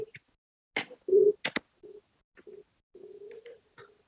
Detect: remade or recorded recorded